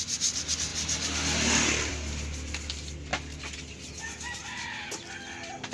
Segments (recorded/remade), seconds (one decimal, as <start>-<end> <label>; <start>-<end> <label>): 0.0-5.7 recorded